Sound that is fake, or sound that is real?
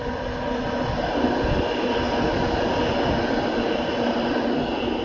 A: real